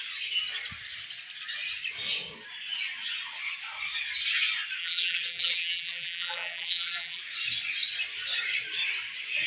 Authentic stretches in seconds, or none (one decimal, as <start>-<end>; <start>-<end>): 0.0-4.8; 7.2-9.5